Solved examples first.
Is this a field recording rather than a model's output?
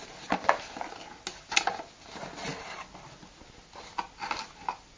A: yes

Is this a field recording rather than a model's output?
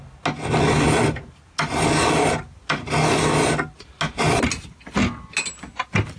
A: yes